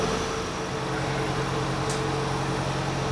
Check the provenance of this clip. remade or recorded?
recorded